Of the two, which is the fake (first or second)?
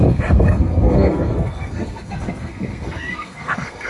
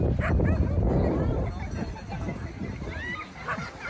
first